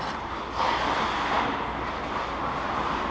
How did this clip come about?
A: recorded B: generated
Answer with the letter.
A